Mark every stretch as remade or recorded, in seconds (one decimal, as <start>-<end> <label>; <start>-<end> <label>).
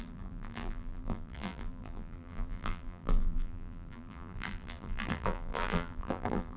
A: 0.0-6.6 remade